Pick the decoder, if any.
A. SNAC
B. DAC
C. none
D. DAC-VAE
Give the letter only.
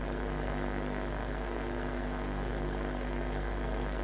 A